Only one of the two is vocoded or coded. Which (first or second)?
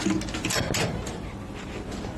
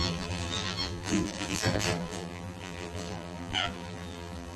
second